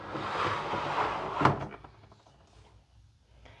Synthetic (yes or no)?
no